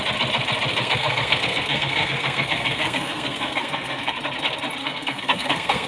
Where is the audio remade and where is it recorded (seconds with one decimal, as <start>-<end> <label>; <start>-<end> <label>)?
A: 0.0-0.7 recorded; 0.7-4.2 remade; 4.2-4.8 recorded; 4.8-5.9 remade